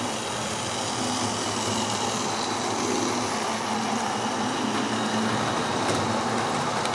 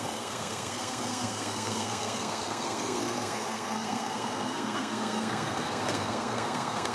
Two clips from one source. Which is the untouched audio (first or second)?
first